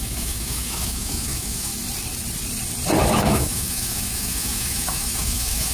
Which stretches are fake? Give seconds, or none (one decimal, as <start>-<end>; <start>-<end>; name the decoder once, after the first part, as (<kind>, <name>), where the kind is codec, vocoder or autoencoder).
0.0-1.7 (autoencoder, DAC-VAE); 3.2-5.7